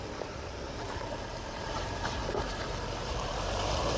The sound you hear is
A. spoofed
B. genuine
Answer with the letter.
A